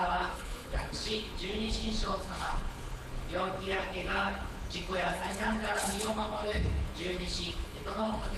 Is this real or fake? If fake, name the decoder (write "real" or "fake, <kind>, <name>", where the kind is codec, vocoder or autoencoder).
fake, codec, HILCodec